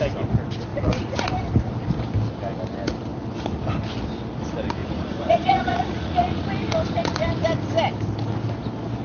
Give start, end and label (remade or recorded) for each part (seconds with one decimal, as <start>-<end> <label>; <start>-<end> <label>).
0.0-0.7 recorded; 0.7-1.3 remade; 1.3-4.8 recorded; 4.8-6.4 remade; 6.4-9.0 recorded